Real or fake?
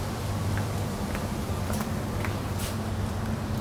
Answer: fake